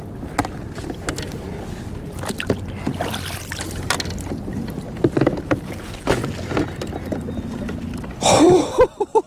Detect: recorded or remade recorded